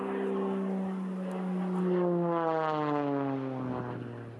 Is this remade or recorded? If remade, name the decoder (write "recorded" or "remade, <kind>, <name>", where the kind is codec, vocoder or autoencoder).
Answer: recorded